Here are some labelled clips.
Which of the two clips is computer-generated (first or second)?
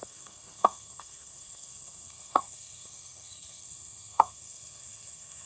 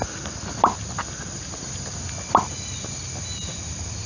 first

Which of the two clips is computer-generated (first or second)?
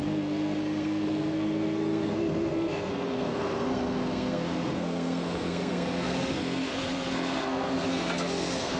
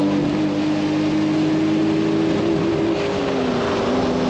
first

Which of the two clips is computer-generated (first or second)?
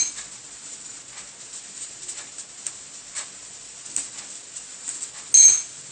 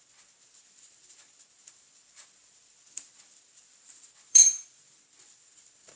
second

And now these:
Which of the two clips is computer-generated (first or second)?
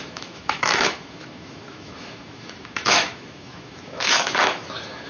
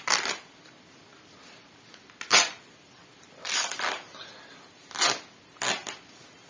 first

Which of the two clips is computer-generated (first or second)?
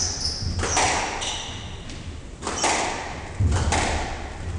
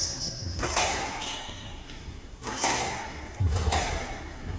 second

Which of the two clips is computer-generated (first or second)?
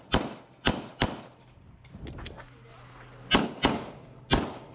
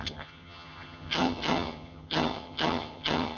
second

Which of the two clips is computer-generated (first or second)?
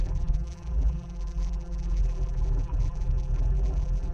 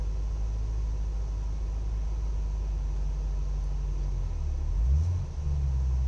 first